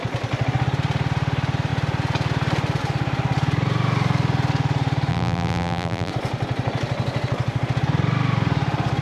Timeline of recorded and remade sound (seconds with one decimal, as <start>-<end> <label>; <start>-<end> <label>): 0.0-5.1 recorded; 5.1-6.1 remade; 6.1-9.0 recorded

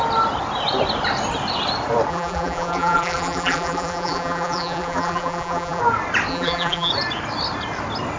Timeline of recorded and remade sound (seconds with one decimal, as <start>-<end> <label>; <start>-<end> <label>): 0.0-2.1 recorded; 2.1-5.8 remade; 5.8-6.3 recorded; 6.3-6.9 remade; 6.9-8.2 recorded

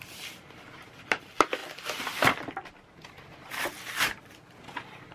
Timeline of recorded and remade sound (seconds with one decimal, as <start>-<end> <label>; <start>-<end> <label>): 0.0-1.6 recorded; 1.6-4.3 remade; 4.3-5.1 recorded

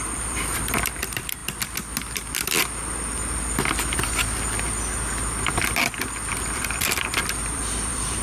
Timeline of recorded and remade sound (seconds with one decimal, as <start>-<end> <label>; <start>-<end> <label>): 0.0-1.4 remade; 1.4-6.3 recorded; 6.3-8.2 remade

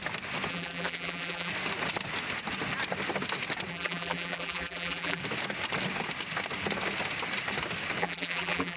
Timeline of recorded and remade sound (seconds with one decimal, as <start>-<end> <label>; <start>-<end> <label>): 0.0-0.5 recorded; 0.5-1.5 remade; 1.5-3.7 recorded; 3.7-5.2 remade; 5.2-8.0 recorded; 8.0-8.8 remade

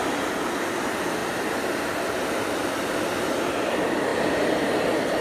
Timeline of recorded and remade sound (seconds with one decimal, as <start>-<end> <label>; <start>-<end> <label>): 0.0-4.1 recorded; 4.1-4.8 remade; 4.8-5.2 recorded

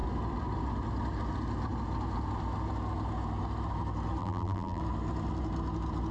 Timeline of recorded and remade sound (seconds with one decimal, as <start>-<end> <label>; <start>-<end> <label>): 0.0-4.2 recorded; 4.2-4.8 remade; 4.8-6.1 recorded

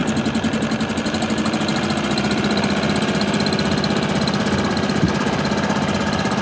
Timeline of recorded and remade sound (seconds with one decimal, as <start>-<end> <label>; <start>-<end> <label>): 0.0-0.9 recorded; 0.9-6.4 remade